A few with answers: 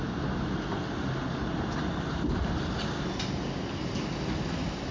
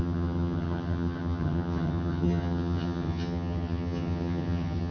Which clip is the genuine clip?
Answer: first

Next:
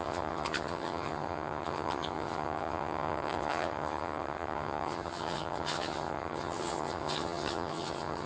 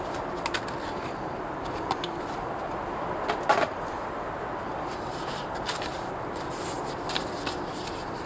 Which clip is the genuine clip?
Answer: second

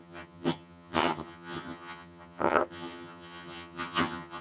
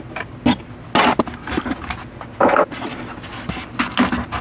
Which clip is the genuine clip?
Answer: second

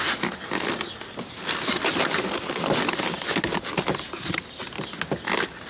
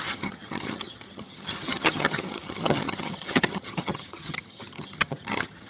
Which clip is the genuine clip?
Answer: first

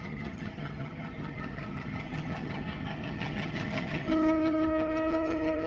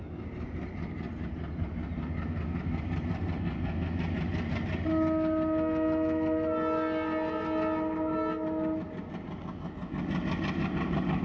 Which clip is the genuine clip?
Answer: second